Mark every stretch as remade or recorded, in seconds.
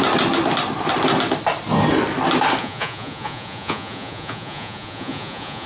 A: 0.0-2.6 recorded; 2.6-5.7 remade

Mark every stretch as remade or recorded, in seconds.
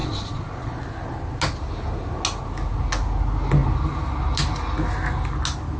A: 0.0-0.8 remade; 0.8-5.8 recorded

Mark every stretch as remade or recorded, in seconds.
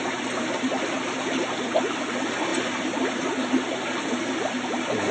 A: 0.0-5.1 recorded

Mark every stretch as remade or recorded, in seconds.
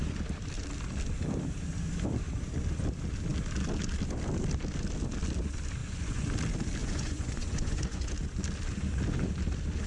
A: 0.0-5.8 recorded; 5.8-6.3 remade; 6.3-6.8 recorded; 6.8-8.1 remade; 8.1-9.9 recorded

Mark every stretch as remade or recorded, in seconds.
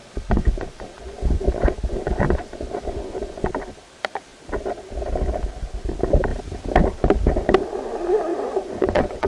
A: 0.0-3.5 remade; 3.5-8.3 recorded; 8.3-9.3 remade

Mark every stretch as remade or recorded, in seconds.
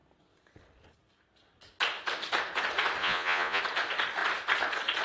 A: 0.0-3.0 recorded; 3.0-3.6 remade; 3.6-5.0 recorded